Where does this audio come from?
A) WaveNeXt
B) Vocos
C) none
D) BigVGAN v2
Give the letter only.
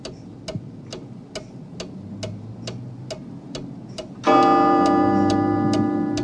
C